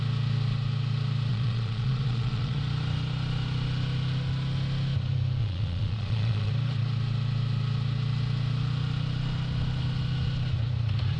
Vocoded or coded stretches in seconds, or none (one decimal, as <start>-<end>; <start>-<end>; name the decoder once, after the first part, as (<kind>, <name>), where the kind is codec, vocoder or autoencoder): 1.3-2.6 (vocoder, Vocos); 5.4-6.5